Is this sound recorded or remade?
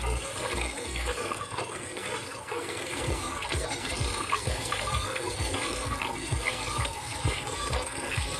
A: remade